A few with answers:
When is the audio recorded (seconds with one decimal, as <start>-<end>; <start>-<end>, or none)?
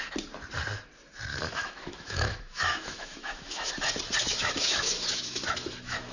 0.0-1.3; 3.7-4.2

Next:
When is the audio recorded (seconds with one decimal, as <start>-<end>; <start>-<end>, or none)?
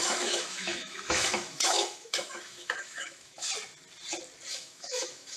3.5-4.5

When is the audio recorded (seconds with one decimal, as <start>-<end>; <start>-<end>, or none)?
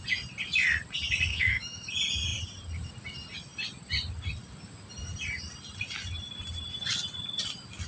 0.0-1.3; 1.9-7.9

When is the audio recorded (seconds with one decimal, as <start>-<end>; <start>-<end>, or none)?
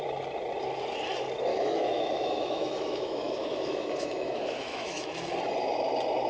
0.0-1.5; 5.3-6.3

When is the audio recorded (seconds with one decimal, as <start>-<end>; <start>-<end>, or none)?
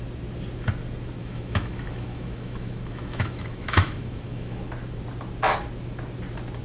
0.0-1.2; 4.6-6.6